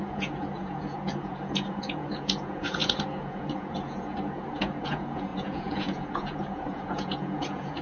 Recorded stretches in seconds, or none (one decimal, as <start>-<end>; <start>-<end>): none